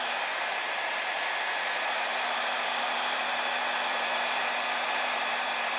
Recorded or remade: remade